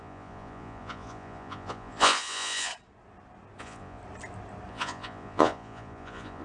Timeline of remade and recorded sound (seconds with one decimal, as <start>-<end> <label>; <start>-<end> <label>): 0.0-2.7 remade; 2.7-3.6 recorded; 3.6-4.0 remade; 4.0-4.7 recorded; 4.7-6.4 remade